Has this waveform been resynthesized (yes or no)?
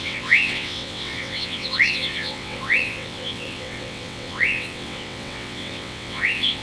yes